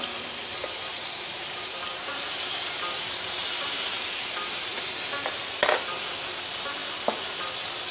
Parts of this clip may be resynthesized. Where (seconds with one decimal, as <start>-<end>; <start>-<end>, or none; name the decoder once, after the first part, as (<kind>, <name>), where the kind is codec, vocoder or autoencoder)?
0.5-4.9 (vocoder, BigVGAN v2)